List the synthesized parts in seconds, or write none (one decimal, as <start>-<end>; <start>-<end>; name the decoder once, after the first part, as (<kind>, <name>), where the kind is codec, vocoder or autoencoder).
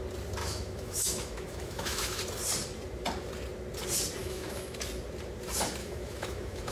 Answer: 0.4-2.2 (autoencoder, DAC-VAE); 4.2-4.8; 5.8-6.7